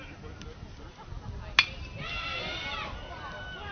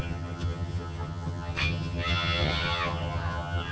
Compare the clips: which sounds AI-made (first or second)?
second